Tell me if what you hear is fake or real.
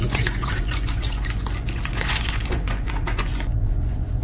fake